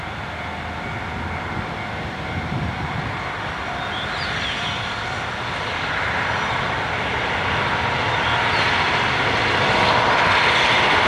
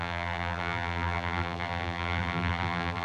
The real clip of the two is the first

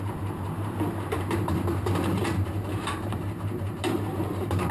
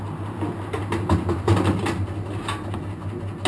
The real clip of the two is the second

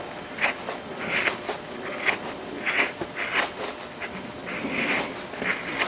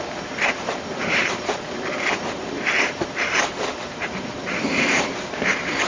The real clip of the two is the first